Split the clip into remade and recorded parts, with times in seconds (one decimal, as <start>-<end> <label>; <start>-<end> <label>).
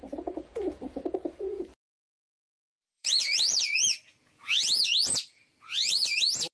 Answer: 0.0-6.5 remade